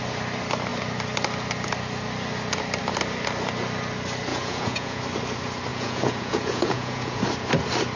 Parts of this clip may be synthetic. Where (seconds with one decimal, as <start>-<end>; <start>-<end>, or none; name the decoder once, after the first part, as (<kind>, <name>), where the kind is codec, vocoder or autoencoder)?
4.3-5.0 (vocoder, Vocos); 5.7-7.2